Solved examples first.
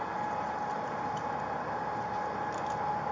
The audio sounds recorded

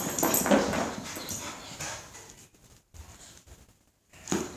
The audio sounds recorded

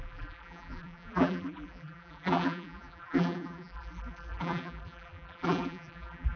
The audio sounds remade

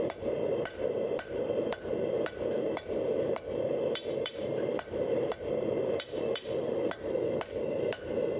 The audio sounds remade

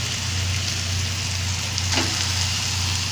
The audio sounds recorded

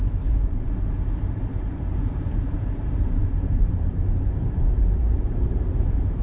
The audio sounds remade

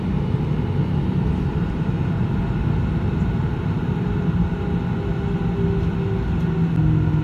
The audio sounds recorded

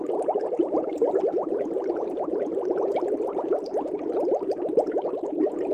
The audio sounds remade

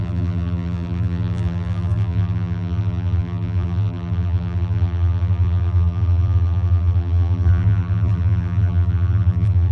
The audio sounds remade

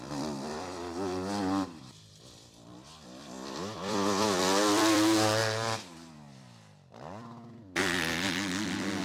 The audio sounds remade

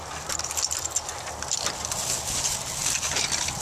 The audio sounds recorded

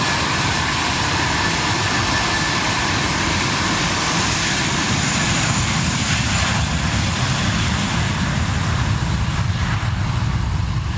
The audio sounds remade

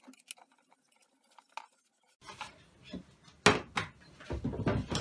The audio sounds recorded